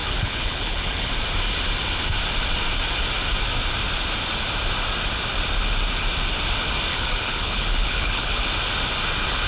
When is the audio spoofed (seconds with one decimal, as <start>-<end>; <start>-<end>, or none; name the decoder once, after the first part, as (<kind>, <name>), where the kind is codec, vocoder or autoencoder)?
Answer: 0.0-1.1 (codec, HILCodec); 6.9-8.4